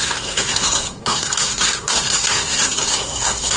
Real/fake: fake